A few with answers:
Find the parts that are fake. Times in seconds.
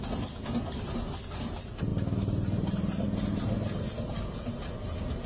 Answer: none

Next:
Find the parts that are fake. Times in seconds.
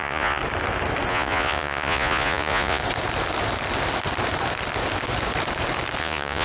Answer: 0.0-0.4 (vocoder, Vocos); 1.1-2.8; 6.0-6.4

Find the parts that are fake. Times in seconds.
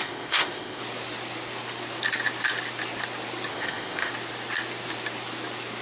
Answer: 0.0-0.8 (codec, ZipCodec); 3.5-4.1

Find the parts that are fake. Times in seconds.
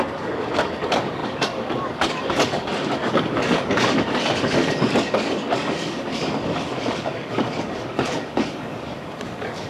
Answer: 0.0-9.7 (codec, DAC)